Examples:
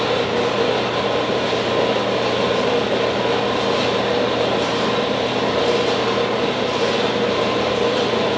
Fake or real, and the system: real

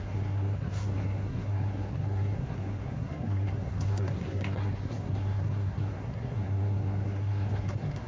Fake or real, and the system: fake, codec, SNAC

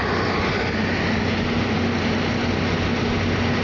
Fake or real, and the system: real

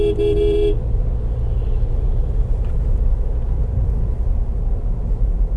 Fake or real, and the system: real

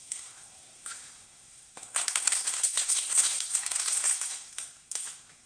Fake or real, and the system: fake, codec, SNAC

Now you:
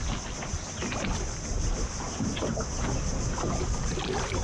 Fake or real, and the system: real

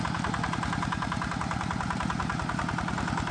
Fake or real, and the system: real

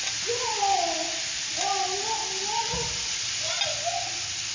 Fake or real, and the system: real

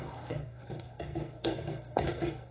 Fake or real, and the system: fake, codec, SNAC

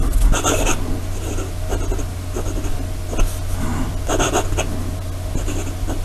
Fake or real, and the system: real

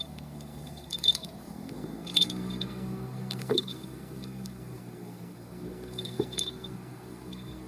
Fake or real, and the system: fake, codec, SNAC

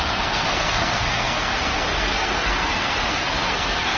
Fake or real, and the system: fake, codec, SNAC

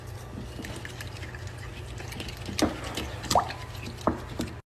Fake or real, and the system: real